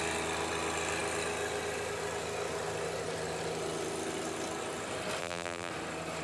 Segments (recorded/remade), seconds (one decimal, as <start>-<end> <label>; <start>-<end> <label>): 0.0-5.2 recorded; 5.2-5.7 remade; 5.7-6.2 recorded